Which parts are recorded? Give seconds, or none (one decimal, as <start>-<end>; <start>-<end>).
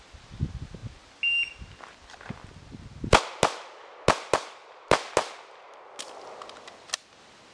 0.0-7.5